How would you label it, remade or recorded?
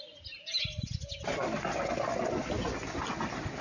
recorded